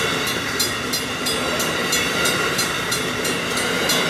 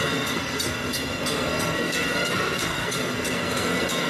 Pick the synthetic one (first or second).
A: second